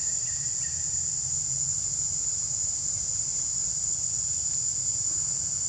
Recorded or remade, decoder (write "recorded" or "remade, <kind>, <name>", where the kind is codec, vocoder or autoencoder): recorded